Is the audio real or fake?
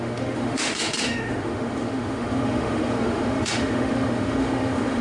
fake